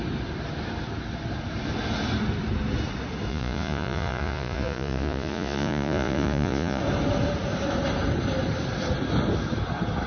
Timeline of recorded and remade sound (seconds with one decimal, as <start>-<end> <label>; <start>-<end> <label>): 0.0-3.3 recorded; 3.3-6.8 remade; 6.8-10.1 recorded